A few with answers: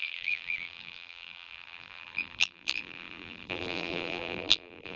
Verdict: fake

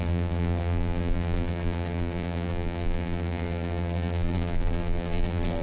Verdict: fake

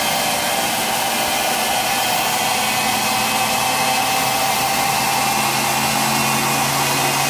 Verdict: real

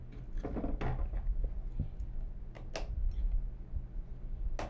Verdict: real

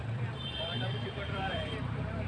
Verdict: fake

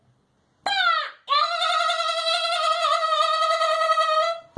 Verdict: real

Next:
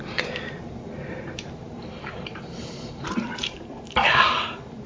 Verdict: fake